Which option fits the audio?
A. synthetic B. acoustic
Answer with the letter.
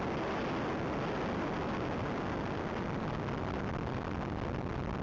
B